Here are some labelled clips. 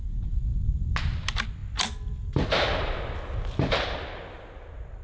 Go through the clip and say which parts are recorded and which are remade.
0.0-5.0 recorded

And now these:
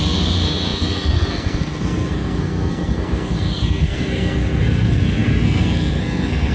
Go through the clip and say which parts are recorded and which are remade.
0.0-6.5 remade

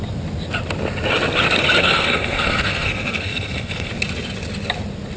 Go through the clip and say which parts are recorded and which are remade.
0.0-1.8 recorded; 1.8-3.9 remade; 3.9-5.2 recorded

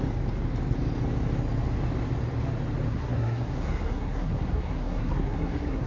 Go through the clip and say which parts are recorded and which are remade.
0.0-2.9 recorded; 2.9-5.9 remade

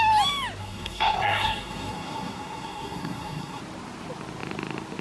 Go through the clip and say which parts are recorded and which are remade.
0.0-0.6 recorded; 0.6-3.6 remade; 3.6-5.0 recorded